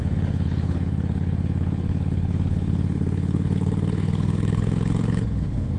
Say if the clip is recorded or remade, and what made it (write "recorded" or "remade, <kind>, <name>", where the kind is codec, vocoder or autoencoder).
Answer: remade, codec, HILCodec